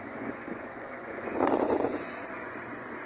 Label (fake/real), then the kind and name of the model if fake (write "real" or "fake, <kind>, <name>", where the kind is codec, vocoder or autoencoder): fake, vocoder, Vocos